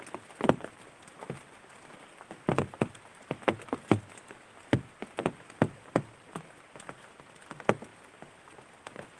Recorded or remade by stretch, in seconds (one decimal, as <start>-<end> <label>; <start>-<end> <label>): 0.0-9.2 recorded